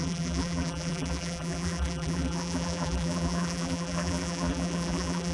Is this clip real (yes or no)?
no